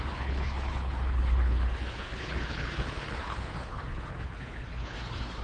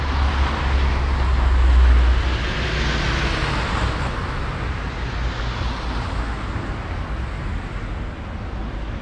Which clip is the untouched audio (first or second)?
second